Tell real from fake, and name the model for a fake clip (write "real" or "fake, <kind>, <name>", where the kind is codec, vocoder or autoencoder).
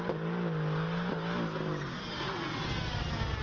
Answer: real